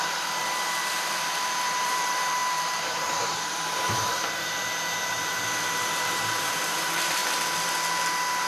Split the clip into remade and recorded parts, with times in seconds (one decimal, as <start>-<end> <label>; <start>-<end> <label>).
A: 0.0-7.2 remade; 7.2-8.5 recorded